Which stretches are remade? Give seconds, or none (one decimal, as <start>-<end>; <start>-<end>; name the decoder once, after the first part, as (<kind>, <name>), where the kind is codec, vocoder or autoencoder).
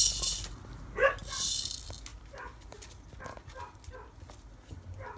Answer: none